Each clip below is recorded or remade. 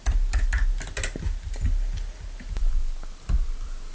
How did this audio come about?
recorded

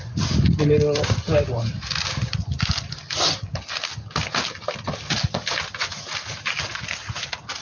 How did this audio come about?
recorded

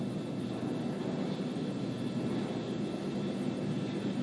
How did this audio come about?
recorded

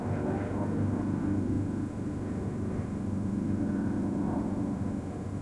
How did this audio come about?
remade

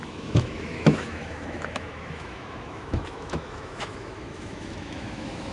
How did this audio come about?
remade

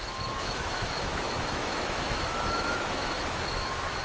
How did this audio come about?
remade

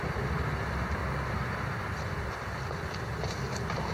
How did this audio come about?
recorded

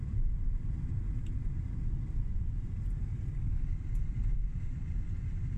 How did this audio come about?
recorded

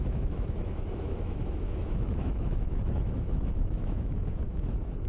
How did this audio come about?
remade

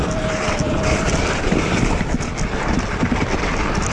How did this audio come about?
recorded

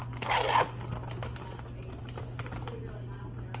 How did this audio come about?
recorded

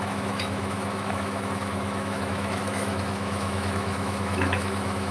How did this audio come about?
remade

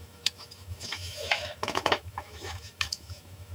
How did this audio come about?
remade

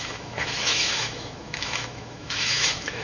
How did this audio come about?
remade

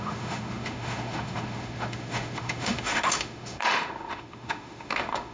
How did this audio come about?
remade